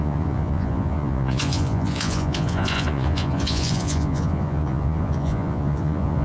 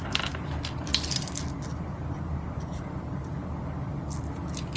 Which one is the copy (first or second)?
first